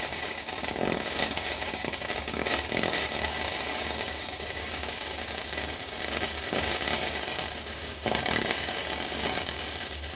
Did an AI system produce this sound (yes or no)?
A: yes